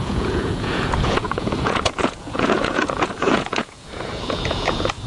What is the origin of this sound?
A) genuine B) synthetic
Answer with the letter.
B